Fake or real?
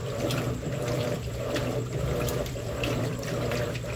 fake